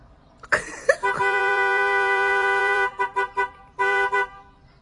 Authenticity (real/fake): fake